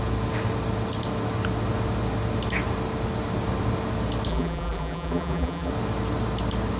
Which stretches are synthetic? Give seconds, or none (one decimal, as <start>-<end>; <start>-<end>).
4.3-5.7